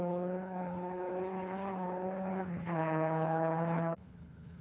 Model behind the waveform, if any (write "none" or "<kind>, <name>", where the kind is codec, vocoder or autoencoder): codec, HILCodec